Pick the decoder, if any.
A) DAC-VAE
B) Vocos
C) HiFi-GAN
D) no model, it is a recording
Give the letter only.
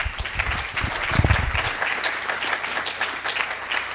D